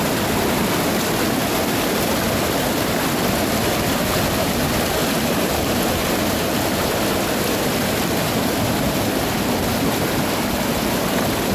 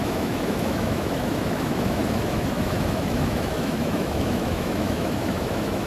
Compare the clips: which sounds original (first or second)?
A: first